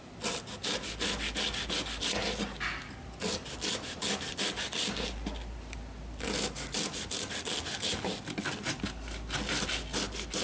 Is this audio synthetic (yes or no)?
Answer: no